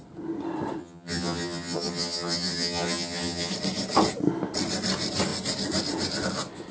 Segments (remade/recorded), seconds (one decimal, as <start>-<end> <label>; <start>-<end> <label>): 0.0-0.8 recorded; 0.8-3.5 remade; 3.5-6.7 recorded